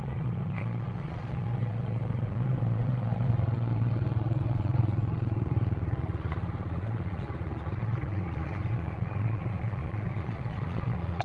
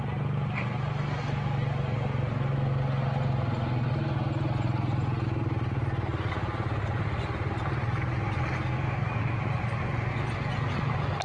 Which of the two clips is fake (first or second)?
first